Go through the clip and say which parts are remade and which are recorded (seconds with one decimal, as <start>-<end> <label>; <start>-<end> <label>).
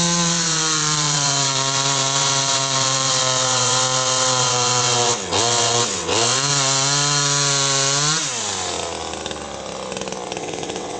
0.0-6.5 remade; 6.5-10.4 recorded; 10.4-11.0 remade